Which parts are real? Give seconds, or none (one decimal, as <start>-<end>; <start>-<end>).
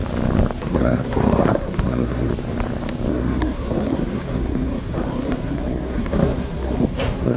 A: 0.0-0.6; 2.3-3.1